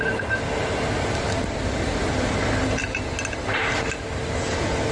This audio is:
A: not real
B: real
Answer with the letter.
B